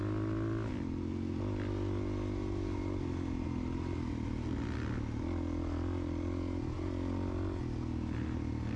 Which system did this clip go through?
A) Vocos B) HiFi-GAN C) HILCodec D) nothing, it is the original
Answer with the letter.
D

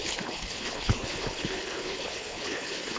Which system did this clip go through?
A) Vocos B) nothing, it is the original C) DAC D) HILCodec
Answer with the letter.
D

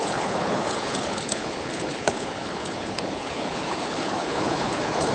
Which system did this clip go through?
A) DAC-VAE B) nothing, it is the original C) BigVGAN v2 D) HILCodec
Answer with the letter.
D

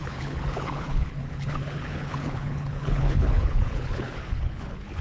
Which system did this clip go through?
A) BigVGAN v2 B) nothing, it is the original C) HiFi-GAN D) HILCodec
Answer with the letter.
D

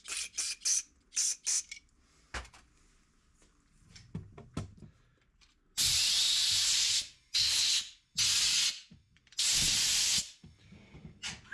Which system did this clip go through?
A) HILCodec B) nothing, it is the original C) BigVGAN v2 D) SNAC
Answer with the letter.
B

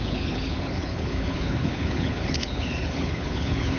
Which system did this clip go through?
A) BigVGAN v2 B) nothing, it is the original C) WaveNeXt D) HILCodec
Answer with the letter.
D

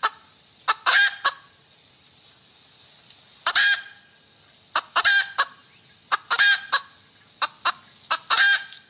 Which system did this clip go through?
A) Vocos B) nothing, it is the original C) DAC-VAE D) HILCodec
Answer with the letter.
B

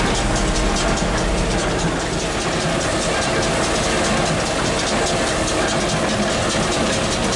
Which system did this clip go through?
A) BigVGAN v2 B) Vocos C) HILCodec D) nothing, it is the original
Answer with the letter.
D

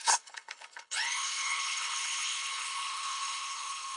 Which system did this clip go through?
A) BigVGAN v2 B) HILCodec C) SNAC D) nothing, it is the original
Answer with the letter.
B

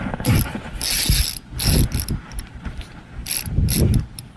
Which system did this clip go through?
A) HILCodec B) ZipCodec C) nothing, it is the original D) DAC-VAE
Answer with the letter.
C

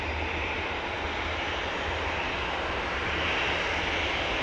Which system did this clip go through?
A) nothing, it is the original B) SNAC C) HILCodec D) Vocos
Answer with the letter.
A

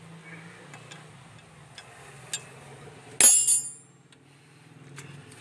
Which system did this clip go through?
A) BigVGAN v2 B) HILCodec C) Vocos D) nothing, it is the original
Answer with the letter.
D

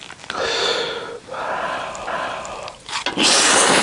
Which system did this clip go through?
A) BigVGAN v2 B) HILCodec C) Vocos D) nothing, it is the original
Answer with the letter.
D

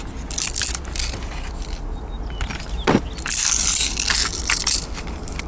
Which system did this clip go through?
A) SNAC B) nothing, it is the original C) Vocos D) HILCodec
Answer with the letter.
B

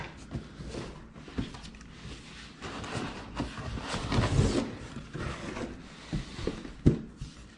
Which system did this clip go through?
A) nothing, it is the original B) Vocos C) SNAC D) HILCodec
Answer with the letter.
A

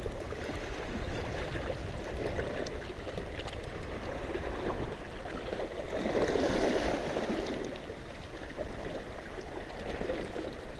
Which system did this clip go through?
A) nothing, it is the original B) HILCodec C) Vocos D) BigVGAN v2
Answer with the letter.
A